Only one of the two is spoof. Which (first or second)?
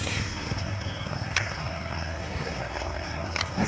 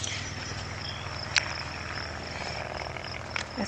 first